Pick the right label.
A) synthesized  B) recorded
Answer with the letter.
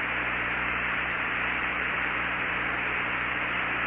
A